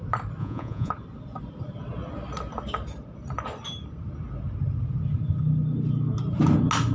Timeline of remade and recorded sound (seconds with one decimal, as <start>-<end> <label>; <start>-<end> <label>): 0.0-0.4 recorded; 0.4-0.9 remade; 0.9-6.9 recorded